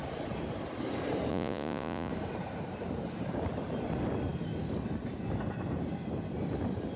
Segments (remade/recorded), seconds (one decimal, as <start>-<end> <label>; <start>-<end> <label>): 0.0-1.3 recorded; 1.3-2.1 remade; 2.1-7.0 recorded

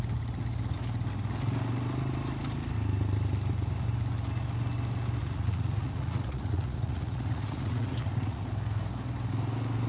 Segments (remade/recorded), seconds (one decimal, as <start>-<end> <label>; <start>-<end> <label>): 0.0-5.2 recorded; 5.2-8.4 remade; 8.4-9.9 recorded

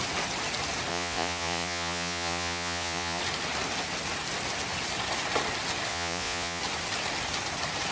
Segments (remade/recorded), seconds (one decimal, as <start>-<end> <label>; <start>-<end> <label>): 0.0-0.9 recorded; 0.9-3.2 remade; 3.2-5.9 recorded; 5.9-6.6 remade; 6.6-7.9 recorded

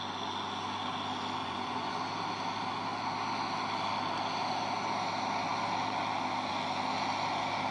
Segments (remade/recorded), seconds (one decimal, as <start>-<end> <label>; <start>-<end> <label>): 0.0-1.4 recorded; 1.4-1.9 remade; 1.9-7.7 recorded

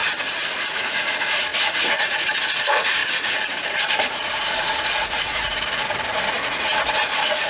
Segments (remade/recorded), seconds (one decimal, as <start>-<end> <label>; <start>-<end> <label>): 0.0-0.7 recorded; 0.7-7.5 remade

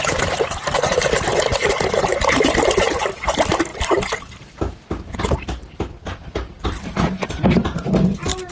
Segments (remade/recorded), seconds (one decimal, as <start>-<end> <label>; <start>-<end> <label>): 0.0-8.5 recorded

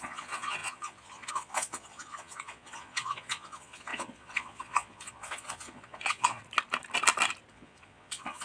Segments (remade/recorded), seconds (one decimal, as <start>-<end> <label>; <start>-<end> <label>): 0.0-6.4 remade; 6.4-7.5 recorded; 7.5-8.4 remade

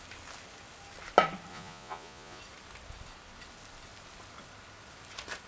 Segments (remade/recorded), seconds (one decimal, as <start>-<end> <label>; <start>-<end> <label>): 0.0-1.5 recorded; 1.5-2.4 remade; 2.4-5.5 recorded